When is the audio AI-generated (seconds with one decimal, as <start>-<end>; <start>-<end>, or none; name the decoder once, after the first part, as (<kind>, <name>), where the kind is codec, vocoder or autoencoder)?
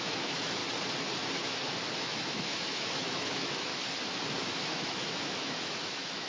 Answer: 0.0-0.6 (autoencoder, DAC-VAE); 2.0-3.7; 4.4-6.3